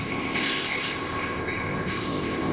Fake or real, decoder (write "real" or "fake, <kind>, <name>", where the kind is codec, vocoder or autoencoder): fake, codec, ZipCodec